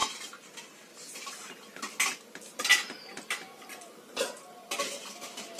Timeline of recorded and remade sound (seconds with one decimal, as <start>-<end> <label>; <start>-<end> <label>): 0.0-5.6 recorded